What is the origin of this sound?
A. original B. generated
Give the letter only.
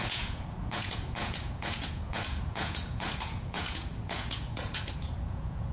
B